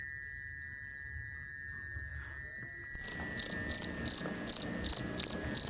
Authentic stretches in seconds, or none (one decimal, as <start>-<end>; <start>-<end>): 0.0-5.7